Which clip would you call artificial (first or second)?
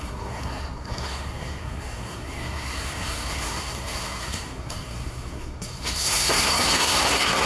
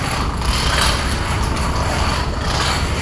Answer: first